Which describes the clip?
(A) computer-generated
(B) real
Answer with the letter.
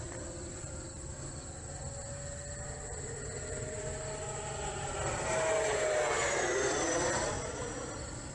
B